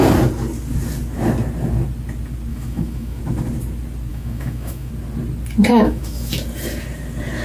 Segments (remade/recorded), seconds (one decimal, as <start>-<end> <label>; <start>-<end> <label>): 0.0-2.5 recorded; 2.5-3.2 remade; 3.2-4.1 recorded; 4.1-4.9 remade; 4.9-5.7 recorded; 5.7-6.3 remade; 6.3-7.4 recorded